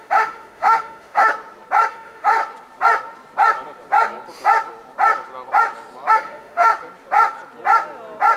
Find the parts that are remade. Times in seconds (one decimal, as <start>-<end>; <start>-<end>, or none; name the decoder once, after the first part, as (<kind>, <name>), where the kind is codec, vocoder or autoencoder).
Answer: 0.0-1.3 (autoencoder, DAC-VAE); 1.9-2.4; 6.1-6.7